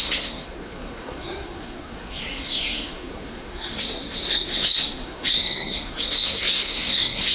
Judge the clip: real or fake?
fake